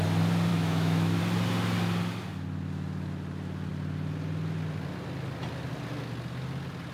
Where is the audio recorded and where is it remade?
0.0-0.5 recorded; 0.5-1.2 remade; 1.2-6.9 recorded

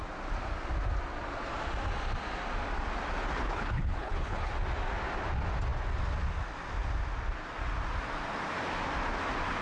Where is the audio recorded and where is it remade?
0.0-3.3 recorded; 3.3-4.5 remade; 4.5-9.6 recorded

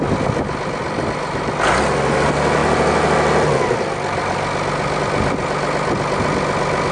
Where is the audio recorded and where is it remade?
0.0-0.8 recorded; 0.8-1.5 remade; 1.5-6.9 recorded